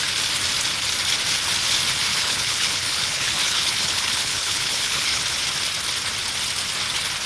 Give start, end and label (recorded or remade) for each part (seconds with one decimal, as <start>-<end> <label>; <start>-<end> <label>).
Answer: 0.0-2.1 recorded; 2.1-5.2 remade; 5.2-7.3 recorded